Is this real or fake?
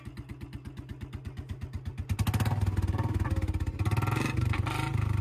real